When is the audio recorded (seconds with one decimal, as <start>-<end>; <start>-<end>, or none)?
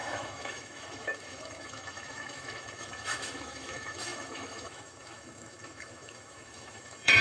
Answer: none